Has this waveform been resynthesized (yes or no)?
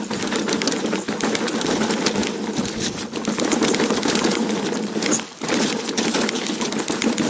no